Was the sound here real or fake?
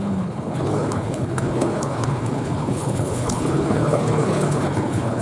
fake